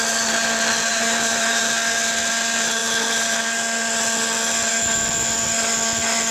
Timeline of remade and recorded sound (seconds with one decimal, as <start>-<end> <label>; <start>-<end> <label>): 0.0-0.9 recorded; 0.9-1.6 remade; 1.6-6.3 recorded